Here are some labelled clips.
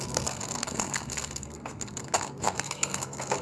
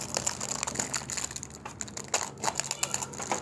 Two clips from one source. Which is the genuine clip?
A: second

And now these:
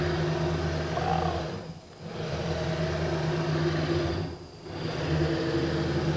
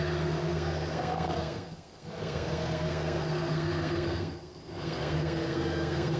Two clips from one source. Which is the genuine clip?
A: first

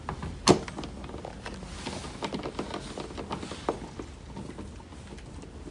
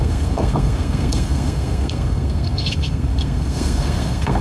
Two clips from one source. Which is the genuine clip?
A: first